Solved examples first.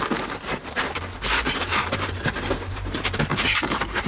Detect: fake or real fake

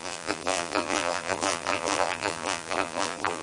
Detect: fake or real fake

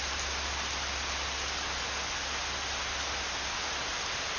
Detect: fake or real real